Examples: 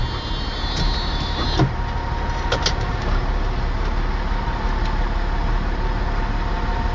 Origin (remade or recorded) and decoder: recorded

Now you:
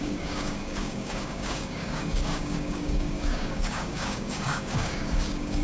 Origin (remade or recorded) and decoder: remade, codec, DAC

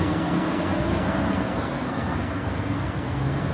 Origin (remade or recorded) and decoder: remade, codec, SNAC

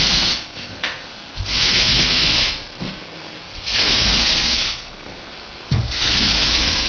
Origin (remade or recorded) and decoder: remade, codec, SNAC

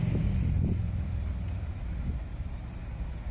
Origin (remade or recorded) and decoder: recorded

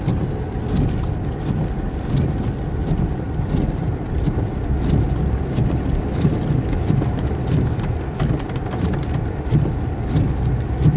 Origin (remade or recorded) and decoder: recorded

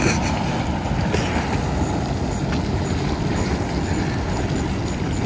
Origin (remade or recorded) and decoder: recorded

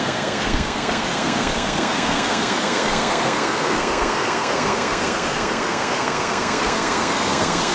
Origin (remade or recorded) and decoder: remade, codec, SNAC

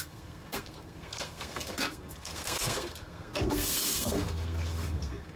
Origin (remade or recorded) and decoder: remade, codec, SNAC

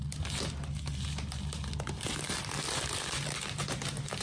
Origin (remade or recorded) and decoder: recorded